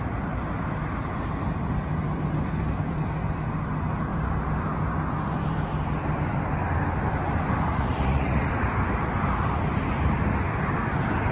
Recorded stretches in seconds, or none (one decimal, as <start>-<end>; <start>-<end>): 0.0-7.7; 8.5-11.3